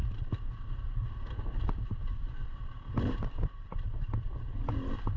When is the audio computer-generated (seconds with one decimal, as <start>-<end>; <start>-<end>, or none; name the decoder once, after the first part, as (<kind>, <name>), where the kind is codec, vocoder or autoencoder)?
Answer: 3.0-4.1 (vocoder, BigVGAN v2)